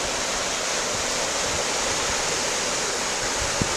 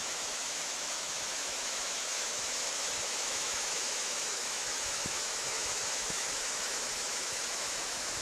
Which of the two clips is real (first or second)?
first